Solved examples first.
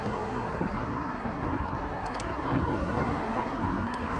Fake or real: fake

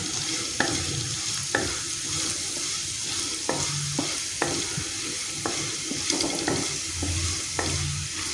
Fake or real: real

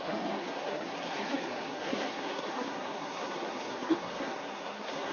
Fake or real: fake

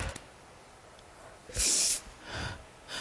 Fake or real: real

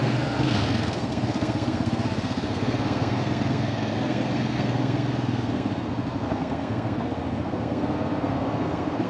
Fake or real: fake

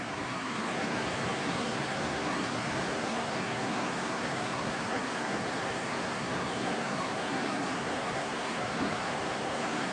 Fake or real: fake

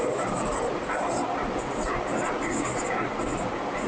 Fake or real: real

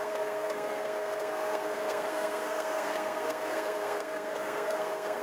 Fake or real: fake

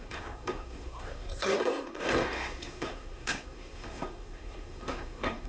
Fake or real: fake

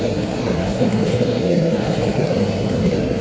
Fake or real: fake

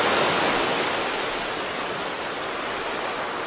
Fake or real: real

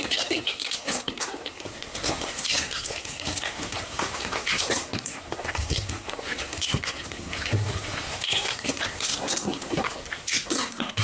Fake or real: fake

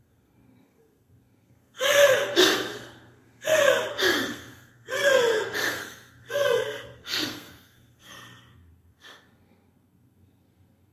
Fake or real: fake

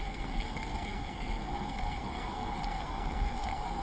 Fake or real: fake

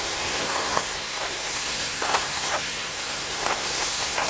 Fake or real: fake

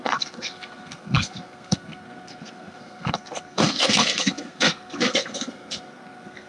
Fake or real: fake